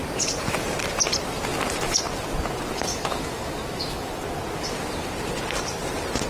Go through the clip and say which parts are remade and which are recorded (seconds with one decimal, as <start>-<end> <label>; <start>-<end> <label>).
0.0-2.9 recorded; 2.9-4.1 remade; 4.1-6.3 recorded

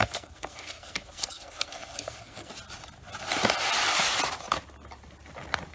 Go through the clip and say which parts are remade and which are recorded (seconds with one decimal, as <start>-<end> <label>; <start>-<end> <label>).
0.0-2.5 remade; 2.5-5.7 recorded

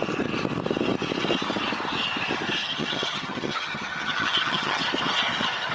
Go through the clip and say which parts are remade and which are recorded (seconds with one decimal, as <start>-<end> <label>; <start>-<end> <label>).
0.0-2.6 recorded; 2.6-4.8 remade; 4.8-5.7 recorded

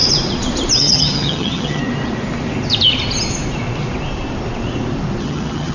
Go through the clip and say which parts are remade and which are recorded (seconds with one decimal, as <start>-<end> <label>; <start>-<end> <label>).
0.0-0.8 recorded; 0.8-1.8 remade; 1.8-5.2 recorded; 5.2-5.7 remade

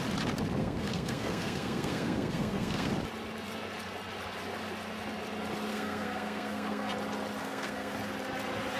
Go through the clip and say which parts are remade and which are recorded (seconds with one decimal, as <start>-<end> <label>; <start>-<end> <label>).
0.0-0.6 recorded; 0.6-2.9 remade; 2.9-5.7 recorded; 5.7-6.9 remade; 6.9-7.4 recorded; 7.4-7.9 remade; 7.9-8.8 recorded

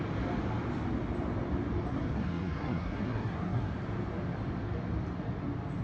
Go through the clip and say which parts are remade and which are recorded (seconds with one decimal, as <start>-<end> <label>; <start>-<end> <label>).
0.0-1.9 recorded; 1.9-3.7 remade; 3.7-5.8 recorded